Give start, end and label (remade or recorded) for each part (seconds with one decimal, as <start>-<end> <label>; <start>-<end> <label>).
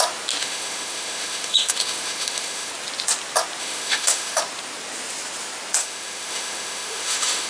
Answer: 0.0-0.4 recorded; 0.4-2.7 remade; 2.7-3.6 recorded; 3.6-4.4 remade; 4.4-5.8 recorded; 5.8-7.5 remade